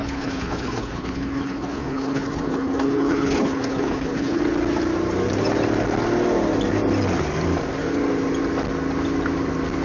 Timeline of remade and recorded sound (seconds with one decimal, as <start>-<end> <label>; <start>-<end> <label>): 0.0-4.4 remade; 4.4-9.8 recorded